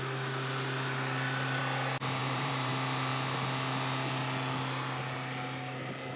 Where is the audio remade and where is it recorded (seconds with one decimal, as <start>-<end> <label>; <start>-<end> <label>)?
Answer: 0.0-2.2 recorded; 2.2-2.7 remade; 2.7-6.2 recorded